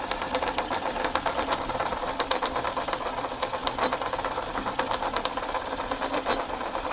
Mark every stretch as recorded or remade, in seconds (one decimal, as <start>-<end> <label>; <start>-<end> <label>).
0.0-6.9 recorded